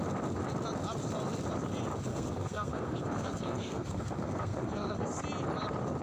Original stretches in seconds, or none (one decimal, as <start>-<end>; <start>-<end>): 0.0-2.1; 5.1-6.0